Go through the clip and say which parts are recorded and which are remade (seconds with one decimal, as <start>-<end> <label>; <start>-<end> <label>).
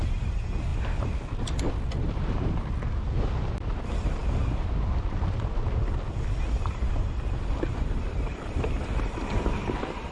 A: 0.0-10.1 recorded